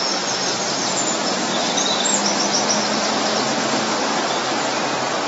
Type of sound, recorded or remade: recorded